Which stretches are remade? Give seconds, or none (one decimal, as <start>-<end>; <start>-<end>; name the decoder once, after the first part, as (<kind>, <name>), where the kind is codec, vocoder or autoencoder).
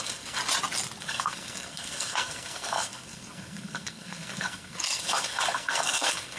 0.0-0.4 (codec, SNAC); 1.0-6.4